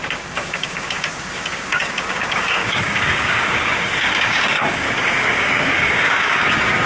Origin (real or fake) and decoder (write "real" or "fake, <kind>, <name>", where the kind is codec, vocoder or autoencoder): fake, codec, DAC